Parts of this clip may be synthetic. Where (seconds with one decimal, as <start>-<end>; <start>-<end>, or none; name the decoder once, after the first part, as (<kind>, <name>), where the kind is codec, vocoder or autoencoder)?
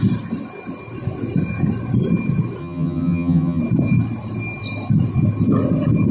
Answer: 2.6-3.6 (vocoder, HiFi-GAN)